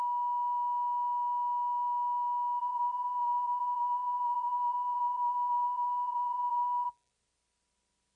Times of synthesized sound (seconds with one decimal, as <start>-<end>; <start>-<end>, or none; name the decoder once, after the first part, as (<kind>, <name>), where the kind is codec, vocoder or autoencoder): 2.6-7.1 (vocoder, BigVGAN v2)